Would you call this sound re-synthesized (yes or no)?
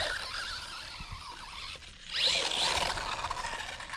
no